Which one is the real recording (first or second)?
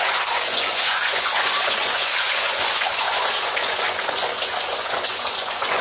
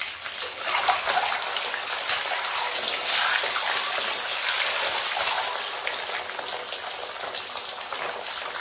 second